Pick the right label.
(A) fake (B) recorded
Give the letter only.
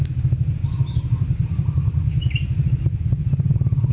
B